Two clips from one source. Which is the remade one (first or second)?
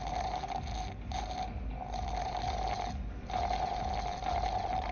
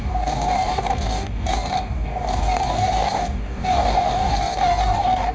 second